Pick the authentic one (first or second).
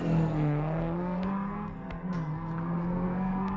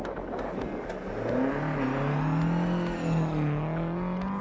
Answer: second